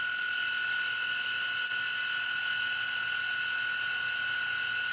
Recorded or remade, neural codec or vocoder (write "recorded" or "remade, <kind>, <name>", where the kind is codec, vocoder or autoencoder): recorded